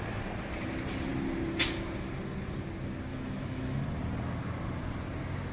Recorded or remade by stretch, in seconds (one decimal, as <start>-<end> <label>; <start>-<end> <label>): 0.0-3.1 recorded; 3.1-3.8 remade; 3.8-5.5 recorded